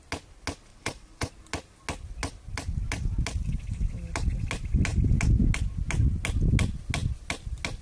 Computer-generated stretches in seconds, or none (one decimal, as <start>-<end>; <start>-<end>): 0.7-1.3